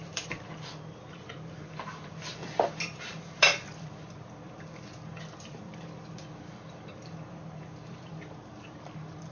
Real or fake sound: fake